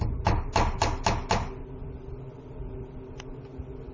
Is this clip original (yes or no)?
yes